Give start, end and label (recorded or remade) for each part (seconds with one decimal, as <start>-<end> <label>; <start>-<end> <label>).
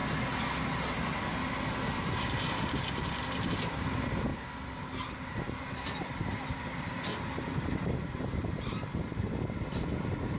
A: 0.0-1.9 recorded; 1.9-4.3 remade; 4.3-5.2 recorded; 5.2-7.1 remade; 7.1-7.7 recorded; 7.7-10.4 remade